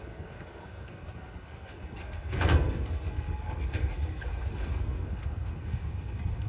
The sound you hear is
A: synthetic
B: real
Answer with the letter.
A